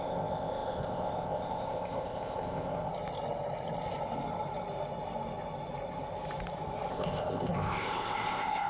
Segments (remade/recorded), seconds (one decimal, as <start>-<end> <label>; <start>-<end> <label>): 0.0-2.9 remade; 2.9-6.9 recorded; 6.9-8.7 remade

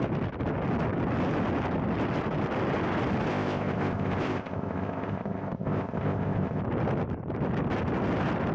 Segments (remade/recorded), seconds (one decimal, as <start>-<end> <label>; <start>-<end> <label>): 0.0-3.3 recorded; 3.3-6.6 remade; 6.6-8.5 recorded

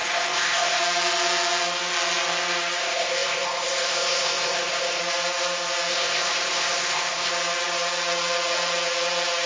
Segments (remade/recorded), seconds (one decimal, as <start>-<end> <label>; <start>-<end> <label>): 0.0-0.8 remade; 0.8-2.8 recorded; 2.8-5.0 remade; 5.0-5.9 recorded; 5.9-7.3 remade; 7.3-9.5 recorded

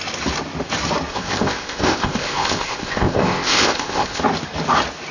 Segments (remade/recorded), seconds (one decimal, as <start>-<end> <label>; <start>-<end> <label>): 0.0-1.1 recorded; 1.1-4.2 remade; 4.2-5.1 recorded

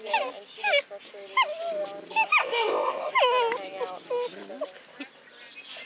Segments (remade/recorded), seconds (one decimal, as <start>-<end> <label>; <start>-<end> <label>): 0.0-2.4 recorded; 2.4-3.1 remade; 3.1-5.9 recorded

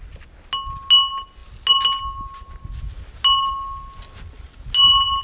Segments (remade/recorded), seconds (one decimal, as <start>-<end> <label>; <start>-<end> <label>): 0.0-5.2 recorded

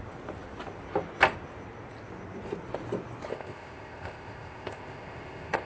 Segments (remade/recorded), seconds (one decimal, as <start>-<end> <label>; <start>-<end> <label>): 0.0-3.3 recorded; 3.3-5.7 remade

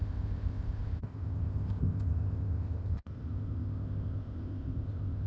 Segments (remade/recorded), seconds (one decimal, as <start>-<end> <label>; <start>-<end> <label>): 0.0-5.3 remade